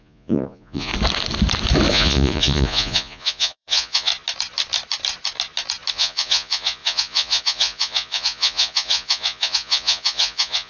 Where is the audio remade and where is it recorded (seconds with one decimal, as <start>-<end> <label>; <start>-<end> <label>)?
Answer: 0.0-0.9 remade; 0.9-1.9 recorded; 1.9-4.1 remade; 4.1-5.9 recorded; 5.9-10.7 remade